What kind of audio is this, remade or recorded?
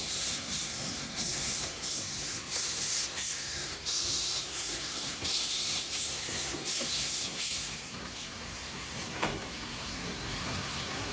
remade